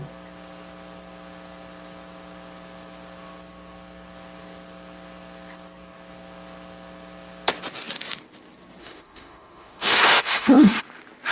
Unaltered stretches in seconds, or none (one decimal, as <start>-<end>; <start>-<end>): 0.0-8.8; 10.8-11.3